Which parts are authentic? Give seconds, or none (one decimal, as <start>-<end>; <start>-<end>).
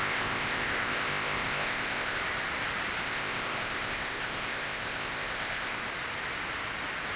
2.2-3.0; 5.8-7.2